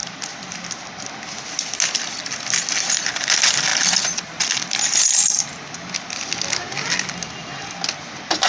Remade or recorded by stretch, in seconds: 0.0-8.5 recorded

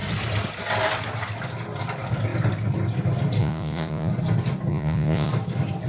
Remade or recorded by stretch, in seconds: 0.0-3.4 recorded; 3.4-4.1 remade; 4.1-4.7 recorded; 4.7-5.3 remade; 5.3-5.9 recorded